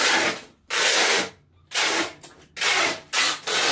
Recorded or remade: recorded